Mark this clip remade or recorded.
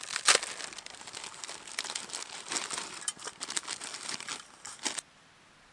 recorded